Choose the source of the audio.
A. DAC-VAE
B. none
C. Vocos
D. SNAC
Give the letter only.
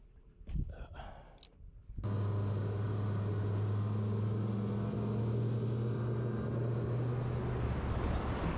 B